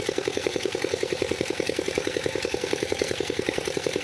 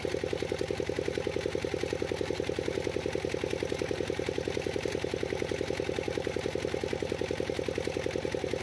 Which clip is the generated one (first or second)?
first